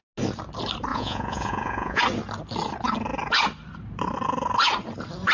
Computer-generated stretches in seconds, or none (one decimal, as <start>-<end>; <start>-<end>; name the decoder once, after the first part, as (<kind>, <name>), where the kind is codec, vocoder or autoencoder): 0.9-2.0 (vocoder, Vocos)